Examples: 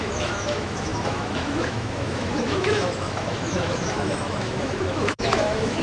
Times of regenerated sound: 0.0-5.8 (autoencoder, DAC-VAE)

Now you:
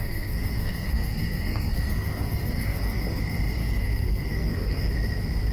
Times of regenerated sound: 0.0-3.2 (codec, SNAC); 3.6-4.9

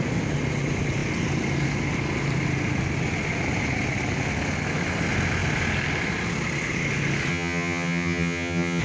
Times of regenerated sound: 7.3-8.8 (vocoder, HiFi-GAN)

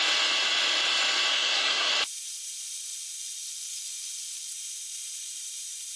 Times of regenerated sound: 1.3-1.9 (codec, SNAC)